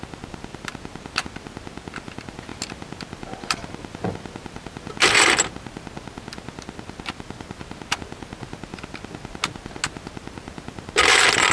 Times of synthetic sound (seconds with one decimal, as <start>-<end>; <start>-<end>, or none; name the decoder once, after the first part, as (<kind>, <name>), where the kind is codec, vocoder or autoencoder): none